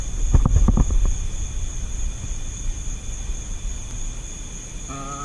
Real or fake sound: real